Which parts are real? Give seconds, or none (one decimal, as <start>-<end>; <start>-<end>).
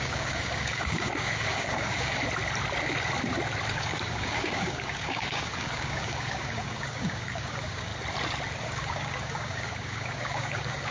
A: 2.2-3.7; 7.9-8.6